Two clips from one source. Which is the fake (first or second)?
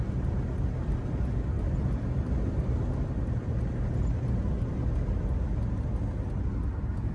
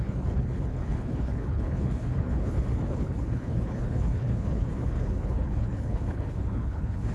second